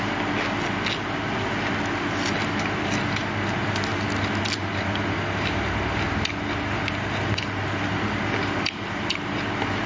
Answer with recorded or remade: recorded